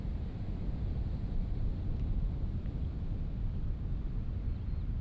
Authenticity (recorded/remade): recorded